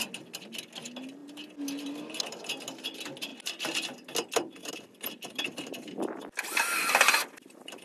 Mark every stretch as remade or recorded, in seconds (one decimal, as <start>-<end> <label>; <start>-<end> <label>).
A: 0.0-7.8 recorded